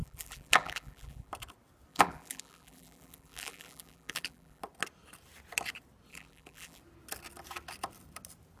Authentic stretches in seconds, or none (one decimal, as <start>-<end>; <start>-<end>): 1.3-1.9; 4.6-6.1; 6.8-8.6